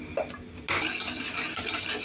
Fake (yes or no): no